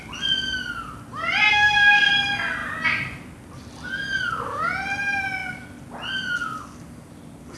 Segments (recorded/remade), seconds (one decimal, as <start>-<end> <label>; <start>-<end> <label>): 0.0-1.5 recorded; 1.5-2.1 remade; 2.1-7.6 recorded

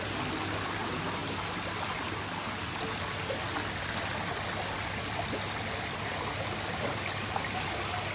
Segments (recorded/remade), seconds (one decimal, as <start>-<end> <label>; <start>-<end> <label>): 0.0-8.1 recorded

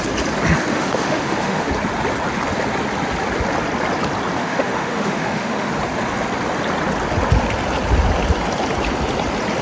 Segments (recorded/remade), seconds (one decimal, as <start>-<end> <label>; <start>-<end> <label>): 0.0-0.7 recorded; 0.7-1.7 remade; 1.7-4.4 recorded; 4.4-5.7 remade; 5.7-9.6 recorded

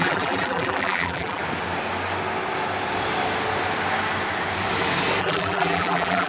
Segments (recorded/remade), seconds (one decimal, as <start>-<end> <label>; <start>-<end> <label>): 0.0-1.4 remade; 1.4-5.2 recorded; 5.2-6.3 remade

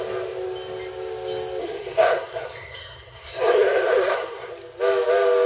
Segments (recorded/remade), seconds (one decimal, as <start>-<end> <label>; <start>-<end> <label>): 0.0-1.6 recorded; 1.6-4.5 remade; 4.5-5.5 recorded

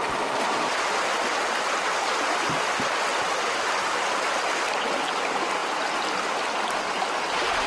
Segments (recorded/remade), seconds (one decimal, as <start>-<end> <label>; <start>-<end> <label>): 0.0-7.7 recorded

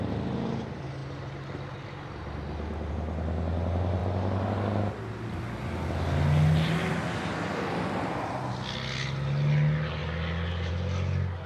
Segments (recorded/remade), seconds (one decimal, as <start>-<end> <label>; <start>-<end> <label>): 0.0-11.5 recorded

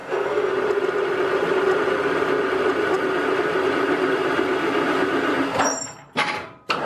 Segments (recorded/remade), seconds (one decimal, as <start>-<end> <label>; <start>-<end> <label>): 0.0-0.5 remade; 0.5-6.8 recorded